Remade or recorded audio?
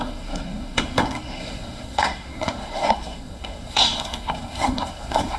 remade